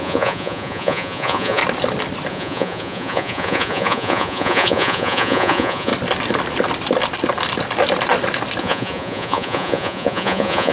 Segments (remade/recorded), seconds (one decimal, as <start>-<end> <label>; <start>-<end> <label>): 0.0-1.6 remade; 1.6-2.3 recorded; 2.3-5.9 remade; 5.9-8.6 recorded; 8.6-10.7 remade